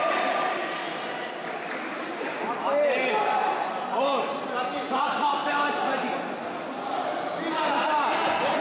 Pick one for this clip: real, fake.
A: real